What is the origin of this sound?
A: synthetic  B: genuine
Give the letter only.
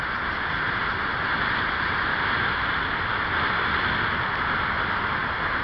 B